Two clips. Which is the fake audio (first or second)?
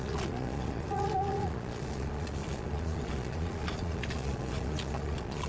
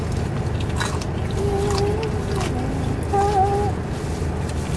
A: first